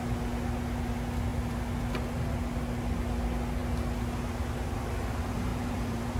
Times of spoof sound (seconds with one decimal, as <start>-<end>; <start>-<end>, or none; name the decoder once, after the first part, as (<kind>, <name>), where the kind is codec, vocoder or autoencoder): 5.5-6.2 (vocoder, BigVGAN v2)